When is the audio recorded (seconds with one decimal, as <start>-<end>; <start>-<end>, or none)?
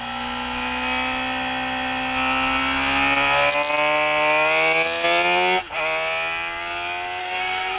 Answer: 0.0-7.2